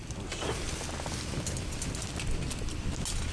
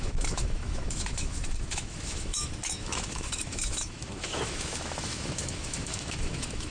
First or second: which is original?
first